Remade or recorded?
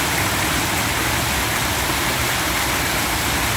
recorded